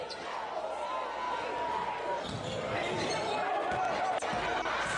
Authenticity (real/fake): real